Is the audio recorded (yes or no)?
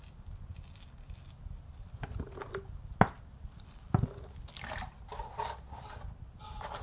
yes